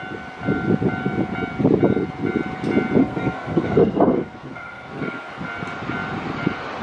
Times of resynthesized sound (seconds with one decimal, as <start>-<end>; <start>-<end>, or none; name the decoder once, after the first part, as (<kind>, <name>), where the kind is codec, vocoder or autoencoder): 3.0-5.3 (codec, SNAC)